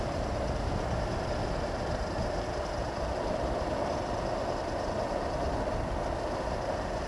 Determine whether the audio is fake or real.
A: real